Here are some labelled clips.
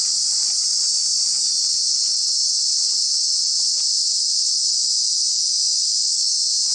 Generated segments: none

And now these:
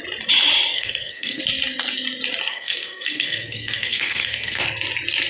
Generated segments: 0.7-1.4 (codec, SNAC); 2.5-4.6

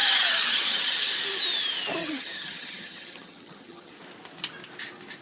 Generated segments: 0.0-1.1 (vocoder, HiFi-GAN); 2.0-3.9

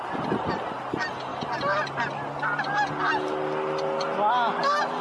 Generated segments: none